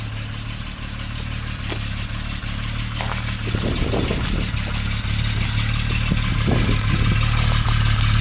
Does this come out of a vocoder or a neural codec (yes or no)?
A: no